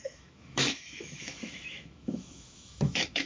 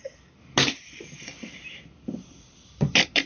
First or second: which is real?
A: second